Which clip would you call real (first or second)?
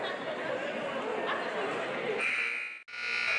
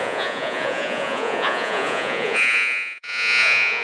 first